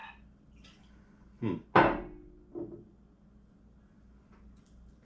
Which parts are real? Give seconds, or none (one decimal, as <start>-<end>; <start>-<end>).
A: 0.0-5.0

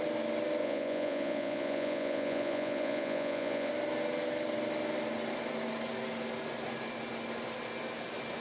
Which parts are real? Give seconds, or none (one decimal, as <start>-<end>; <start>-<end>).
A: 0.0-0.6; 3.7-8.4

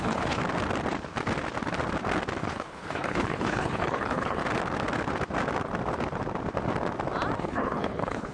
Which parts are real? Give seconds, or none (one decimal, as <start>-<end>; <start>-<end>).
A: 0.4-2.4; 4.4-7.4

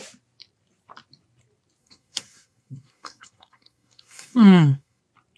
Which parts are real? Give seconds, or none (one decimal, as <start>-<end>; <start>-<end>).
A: 0.0-1.8; 5.0-5.4

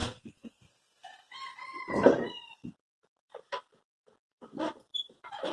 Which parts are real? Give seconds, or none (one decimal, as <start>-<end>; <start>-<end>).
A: 0.6-5.5

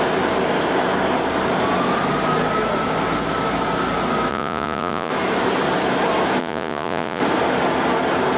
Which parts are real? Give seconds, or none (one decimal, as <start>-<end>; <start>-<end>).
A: 0.0-4.3; 5.1-6.4; 7.2-8.4

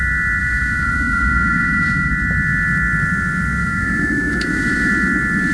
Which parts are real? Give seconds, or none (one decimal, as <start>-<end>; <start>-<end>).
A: 0.0-0.4; 2.1-3.6; 4.9-5.5